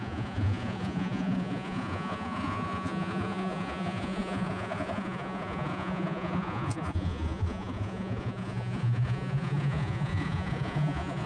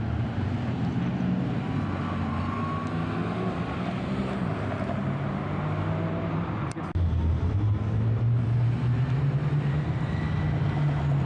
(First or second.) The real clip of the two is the second